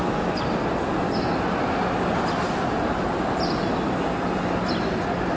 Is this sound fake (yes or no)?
no